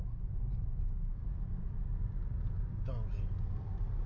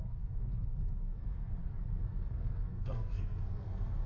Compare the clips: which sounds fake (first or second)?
second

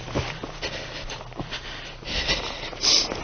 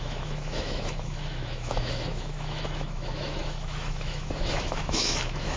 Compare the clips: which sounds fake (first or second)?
second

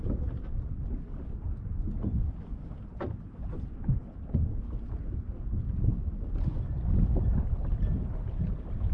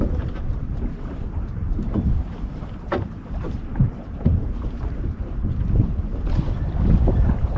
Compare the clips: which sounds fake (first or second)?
second